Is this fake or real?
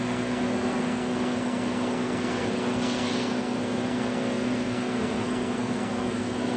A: fake